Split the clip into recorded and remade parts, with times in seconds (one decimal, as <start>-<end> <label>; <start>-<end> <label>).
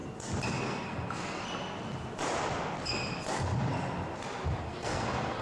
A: 0.0-0.5 recorded; 0.5-1.4 remade; 1.4-4.6 recorded; 4.6-5.4 remade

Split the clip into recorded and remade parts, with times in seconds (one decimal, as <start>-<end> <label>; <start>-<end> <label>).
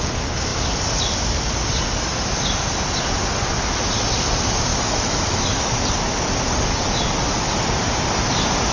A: 0.0-4.7 recorded; 4.7-5.7 remade; 5.7-8.7 recorded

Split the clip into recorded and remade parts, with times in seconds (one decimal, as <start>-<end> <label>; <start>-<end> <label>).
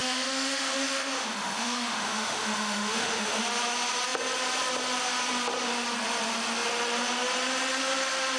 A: 0.0-3.4 remade; 3.4-8.4 recorded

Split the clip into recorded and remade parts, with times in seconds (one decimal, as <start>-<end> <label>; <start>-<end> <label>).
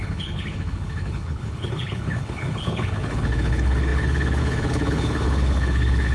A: 0.0-6.1 remade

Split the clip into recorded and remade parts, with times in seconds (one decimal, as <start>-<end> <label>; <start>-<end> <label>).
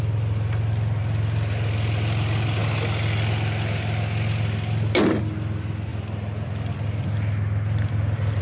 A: 0.0-8.4 recorded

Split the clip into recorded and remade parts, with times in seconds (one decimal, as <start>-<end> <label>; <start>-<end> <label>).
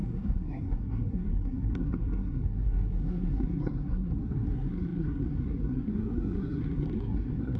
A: 0.0-7.6 remade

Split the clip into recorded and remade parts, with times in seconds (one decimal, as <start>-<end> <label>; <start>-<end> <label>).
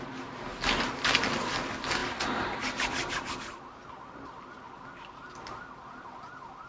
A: 0.0-0.5 remade; 0.5-1.0 recorded; 1.0-6.7 remade